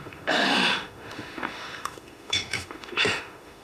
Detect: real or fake fake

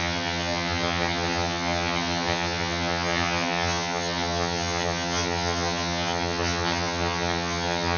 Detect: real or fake fake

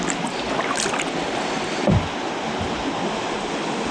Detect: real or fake real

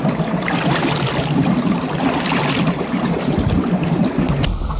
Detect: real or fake real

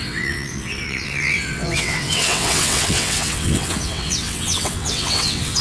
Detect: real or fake fake